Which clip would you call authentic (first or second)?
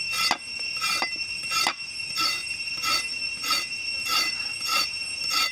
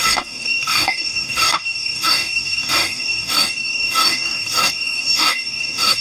first